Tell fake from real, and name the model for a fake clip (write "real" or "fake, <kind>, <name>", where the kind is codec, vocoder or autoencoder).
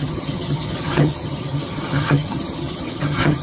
fake, vocoder, HiFi-GAN